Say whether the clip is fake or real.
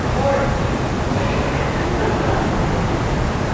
real